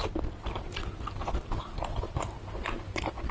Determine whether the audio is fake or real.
real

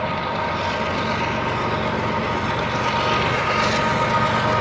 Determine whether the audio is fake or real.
real